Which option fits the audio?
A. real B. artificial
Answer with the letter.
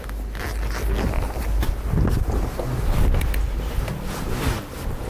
A